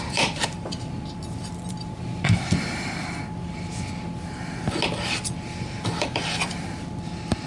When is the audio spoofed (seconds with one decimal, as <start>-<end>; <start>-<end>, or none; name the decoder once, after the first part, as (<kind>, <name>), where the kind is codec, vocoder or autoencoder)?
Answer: 0.0-3.2 (vocoder, BigVGAN v2); 5.8-7.5